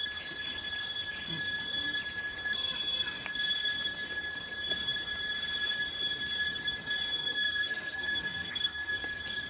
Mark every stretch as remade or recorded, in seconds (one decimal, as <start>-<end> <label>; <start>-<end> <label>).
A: 0.0-7.2 recorded; 7.2-8.9 remade; 8.9-9.5 recorded